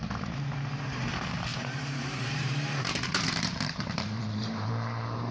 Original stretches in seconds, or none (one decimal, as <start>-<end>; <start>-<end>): 0.0-1.5; 4.7-5.3